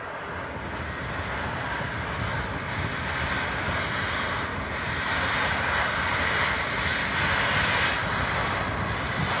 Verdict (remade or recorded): recorded